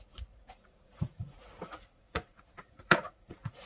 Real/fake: fake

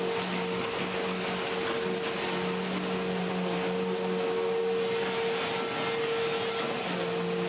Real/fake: real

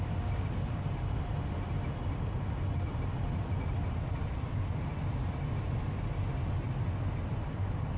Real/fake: real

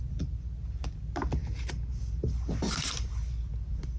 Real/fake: real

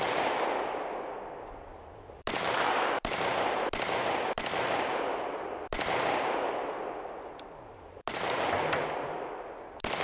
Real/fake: real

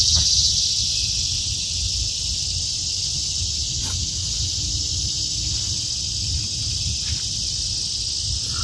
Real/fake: real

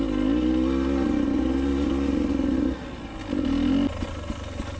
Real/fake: real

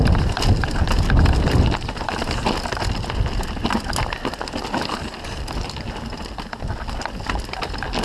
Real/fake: real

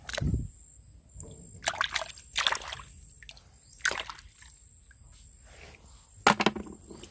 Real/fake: real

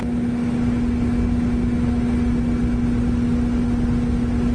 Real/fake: real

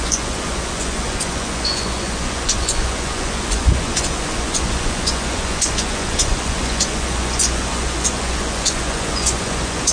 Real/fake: fake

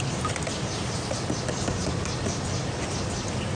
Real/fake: real